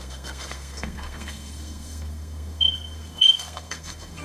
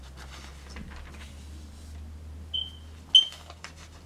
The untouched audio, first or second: second